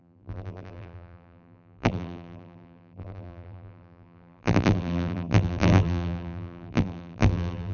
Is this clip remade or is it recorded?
remade